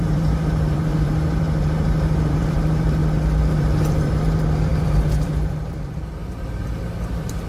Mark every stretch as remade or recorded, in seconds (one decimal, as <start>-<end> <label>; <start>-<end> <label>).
0.0-3.0 remade; 3.0-3.6 recorded; 3.6-7.5 remade